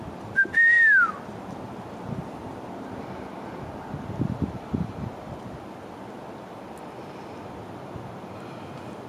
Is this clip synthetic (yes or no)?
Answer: no